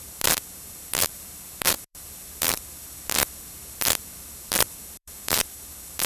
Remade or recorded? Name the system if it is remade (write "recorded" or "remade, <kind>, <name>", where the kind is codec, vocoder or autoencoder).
remade, vocoder, BigVGAN v2